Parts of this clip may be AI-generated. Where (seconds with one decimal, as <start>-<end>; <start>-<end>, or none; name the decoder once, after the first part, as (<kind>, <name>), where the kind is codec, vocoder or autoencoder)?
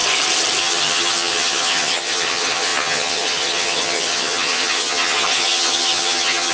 0.6-6.5 (vocoder, HiFi-GAN)